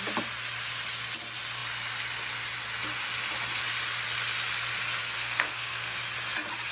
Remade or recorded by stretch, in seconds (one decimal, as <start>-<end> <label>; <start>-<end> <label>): 0.0-5.0 recorded; 5.0-6.0 remade; 6.0-6.7 recorded